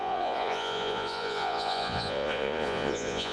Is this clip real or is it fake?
fake